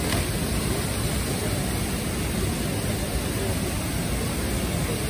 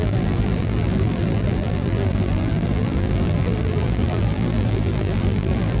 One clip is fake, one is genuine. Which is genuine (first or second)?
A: first